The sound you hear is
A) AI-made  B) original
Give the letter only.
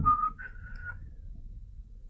A